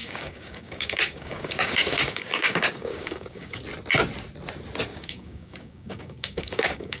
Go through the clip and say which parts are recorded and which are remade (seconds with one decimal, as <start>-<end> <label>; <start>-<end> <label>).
0.0-3.6 remade; 3.6-4.9 recorded; 4.9-7.0 remade